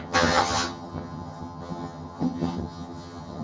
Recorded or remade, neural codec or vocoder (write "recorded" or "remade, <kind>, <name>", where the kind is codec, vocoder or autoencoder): remade, vocoder, HiFi-GAN